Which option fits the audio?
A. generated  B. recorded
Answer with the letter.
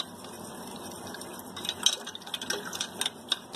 B